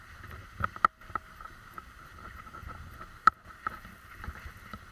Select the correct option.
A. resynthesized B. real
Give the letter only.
B